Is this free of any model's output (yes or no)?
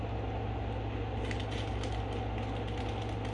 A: yes